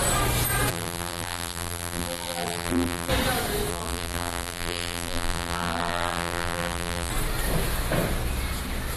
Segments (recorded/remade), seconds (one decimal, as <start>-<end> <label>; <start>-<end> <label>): 0.0-0.7 recorded; 0.7-3.1 remade; 3.1-3.7 recorded; 3.7-7.1 remade; 7.1-9.0 recorded